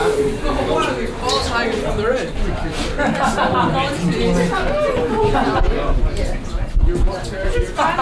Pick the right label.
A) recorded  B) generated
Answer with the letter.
A